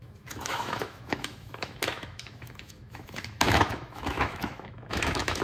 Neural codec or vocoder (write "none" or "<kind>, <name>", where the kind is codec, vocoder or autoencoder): autoencoder, DAC-VAE